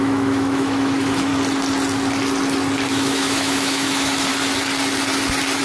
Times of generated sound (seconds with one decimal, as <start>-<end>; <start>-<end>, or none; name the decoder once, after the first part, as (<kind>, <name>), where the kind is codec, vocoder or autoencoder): 0.0-1.3 (autoencoder, DAC-VAE); 2.9-4.3